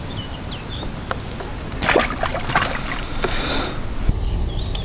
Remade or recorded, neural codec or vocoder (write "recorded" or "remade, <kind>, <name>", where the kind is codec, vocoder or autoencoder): recorded